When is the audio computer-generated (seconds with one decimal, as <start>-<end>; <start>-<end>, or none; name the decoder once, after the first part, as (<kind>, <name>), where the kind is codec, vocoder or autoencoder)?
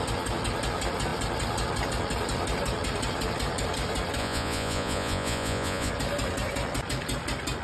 4.2-5.9 (vocoder, Vocos)